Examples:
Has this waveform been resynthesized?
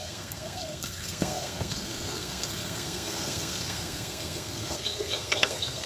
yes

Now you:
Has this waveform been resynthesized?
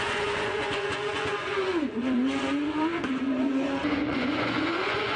yes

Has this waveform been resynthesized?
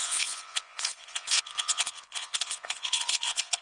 yes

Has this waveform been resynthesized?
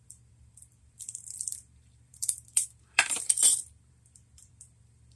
yes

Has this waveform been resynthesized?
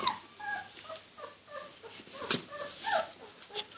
no